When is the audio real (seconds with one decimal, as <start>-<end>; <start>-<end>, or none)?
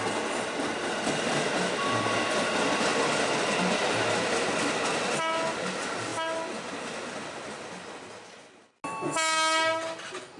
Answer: 0.0-10.4